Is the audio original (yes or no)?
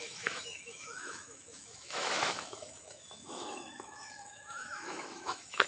no